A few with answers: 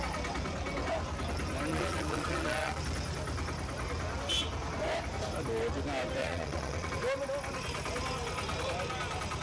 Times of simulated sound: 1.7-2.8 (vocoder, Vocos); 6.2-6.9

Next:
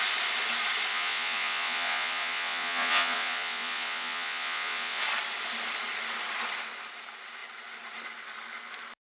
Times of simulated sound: 0.9-5.0 (vocoder, Vocos)